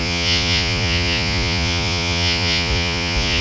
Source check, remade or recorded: remade